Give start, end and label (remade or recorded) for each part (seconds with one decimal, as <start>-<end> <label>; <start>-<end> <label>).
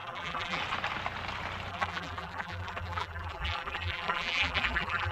0.0-0.6 remade; 0.6-1.7 recorded; 1.7-5.1 remade